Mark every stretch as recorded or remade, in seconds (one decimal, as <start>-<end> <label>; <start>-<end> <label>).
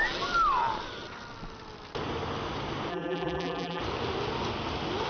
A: 0.0-2.9 recorded; 2.9-3.8 remade; 3.8-5.1 recorded